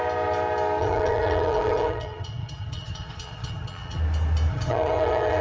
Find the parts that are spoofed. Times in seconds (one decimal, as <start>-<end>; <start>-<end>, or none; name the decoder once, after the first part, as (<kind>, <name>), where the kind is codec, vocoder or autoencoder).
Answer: 0.8-4.0 (vocoder, HiFi-GAN); 4.5-5.4